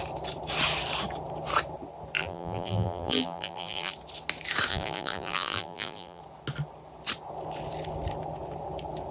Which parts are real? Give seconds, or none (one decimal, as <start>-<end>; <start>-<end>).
0.0-2.2; 3.9-4.7; 6.2-9.1

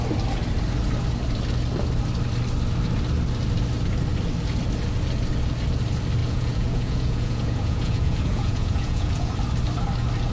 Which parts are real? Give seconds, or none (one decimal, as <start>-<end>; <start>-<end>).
0.0-6.2; 9.3-10.3